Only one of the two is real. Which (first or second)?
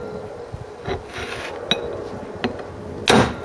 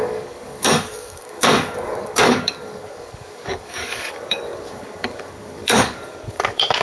first